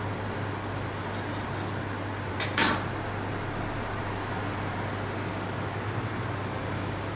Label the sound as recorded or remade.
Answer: recorded